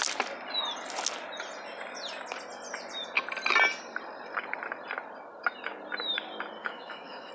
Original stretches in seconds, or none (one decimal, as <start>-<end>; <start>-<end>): 0.0-6.6